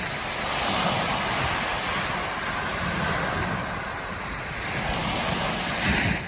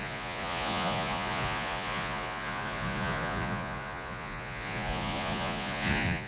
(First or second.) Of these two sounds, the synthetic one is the second